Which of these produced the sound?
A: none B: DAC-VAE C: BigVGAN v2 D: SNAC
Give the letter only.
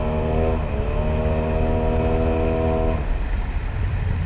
A